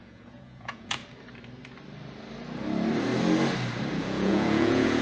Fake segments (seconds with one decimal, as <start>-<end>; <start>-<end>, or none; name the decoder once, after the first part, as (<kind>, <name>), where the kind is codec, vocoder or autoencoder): 0.0-1.0 (vocoder, Vocos); 4.0-5.0